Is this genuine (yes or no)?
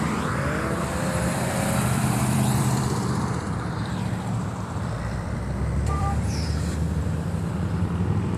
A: no